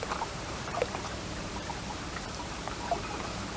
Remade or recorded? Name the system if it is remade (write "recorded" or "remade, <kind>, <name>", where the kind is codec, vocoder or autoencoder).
remade, vocoder, BigVGAN v2